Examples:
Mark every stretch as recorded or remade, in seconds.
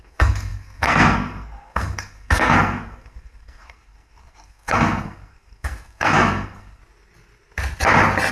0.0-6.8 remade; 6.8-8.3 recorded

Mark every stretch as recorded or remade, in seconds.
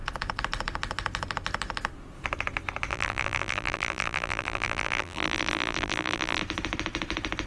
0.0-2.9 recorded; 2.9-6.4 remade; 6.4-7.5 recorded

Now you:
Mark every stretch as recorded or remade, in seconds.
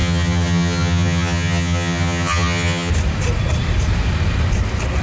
0.0-2.9 remade; 2.9-5.0 recorded